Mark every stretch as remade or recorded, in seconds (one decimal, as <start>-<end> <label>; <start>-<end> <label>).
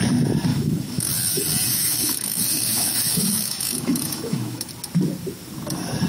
0.0-0.5 recorded; 0.5-1.1 remade; 1.1-1.7 recorded; 1.7-4.7 remade; 4.7-6.1 recorded